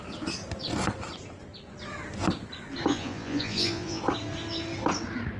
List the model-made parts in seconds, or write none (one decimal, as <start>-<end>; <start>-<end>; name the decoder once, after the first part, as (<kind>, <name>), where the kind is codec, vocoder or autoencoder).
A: 2.9-4.0 (vocoder, Vocos)